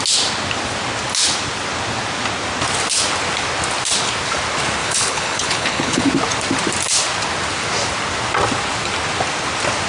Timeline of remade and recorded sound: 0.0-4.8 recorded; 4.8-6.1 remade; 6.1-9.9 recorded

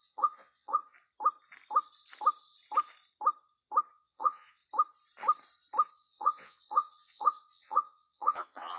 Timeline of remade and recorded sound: 0.0-0.8 remade; 0.8-3.9 recorded; 3.9-4.6 remade; 4.6-5.9 recorded; 5.9-8.8 remade

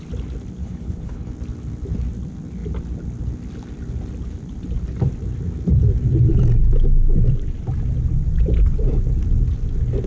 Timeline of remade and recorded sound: 0.0-0.6 recorded; 0.6-1.3 remade; 1.3-10.1 recorded

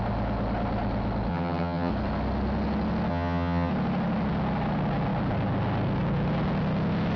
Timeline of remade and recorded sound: 0.0-1.3 recorded; 1.3-1.9 remade; 1.9-3.1 recorded; 3.1-3.7 remade; 3.7-7.2 recorded